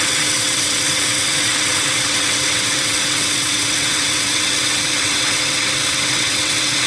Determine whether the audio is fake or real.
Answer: fake